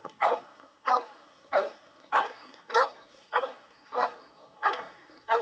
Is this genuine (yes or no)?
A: no